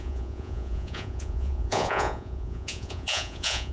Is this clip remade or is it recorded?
remade